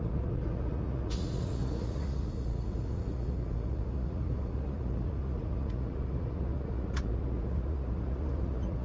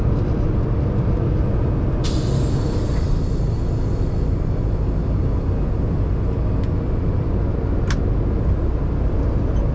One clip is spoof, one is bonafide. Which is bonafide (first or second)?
second